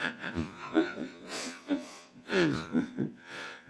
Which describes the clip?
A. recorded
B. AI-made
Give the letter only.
B